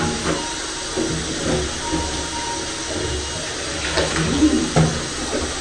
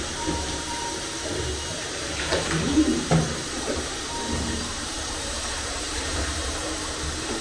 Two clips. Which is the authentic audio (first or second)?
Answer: first